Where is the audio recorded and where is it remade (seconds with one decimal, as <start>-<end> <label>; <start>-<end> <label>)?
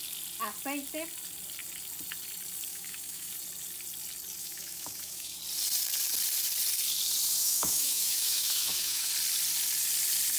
0.0-2.7 recorded; 2.7-3.3 remade; 3.3-4.4 recorded; 4.4-5.4 remade; 5.4-7.4 recorded; 7.4-9.1 remade; 9.1-10.4 recorded